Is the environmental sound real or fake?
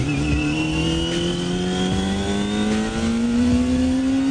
real